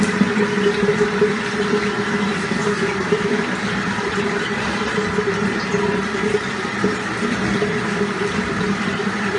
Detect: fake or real fake